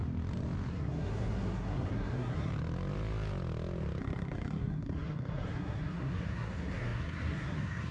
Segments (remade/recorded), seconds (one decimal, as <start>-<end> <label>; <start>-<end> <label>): 0.0-0.7 recorded; 0.7-2.5 remade; 2.5-4.0 recorded; 4.0-7.9 remade